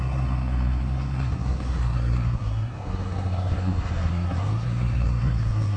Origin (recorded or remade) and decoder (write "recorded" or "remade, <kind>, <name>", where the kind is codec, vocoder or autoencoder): remade, codec, SNAC